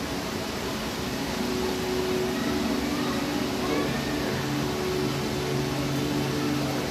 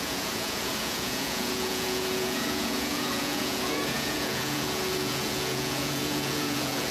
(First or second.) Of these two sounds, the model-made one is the second